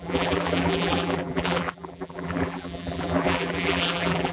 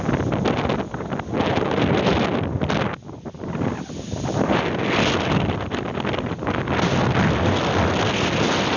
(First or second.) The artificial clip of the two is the first